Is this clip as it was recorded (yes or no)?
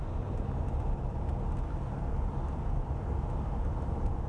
yes